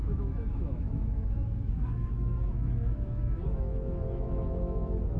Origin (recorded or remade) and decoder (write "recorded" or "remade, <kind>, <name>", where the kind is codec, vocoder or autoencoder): remade, autoencoder, DAC-VAE